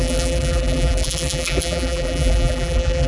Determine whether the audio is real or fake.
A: fake